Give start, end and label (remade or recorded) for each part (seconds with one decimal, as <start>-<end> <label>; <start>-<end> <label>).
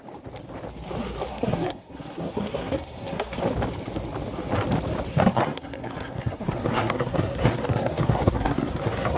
0.0-1.3 recorded; 1.3-3.4 remade; 3.4-5.1 recorded; 5.1-9.2 remade